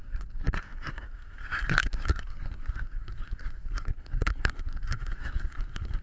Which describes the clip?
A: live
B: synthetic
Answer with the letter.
B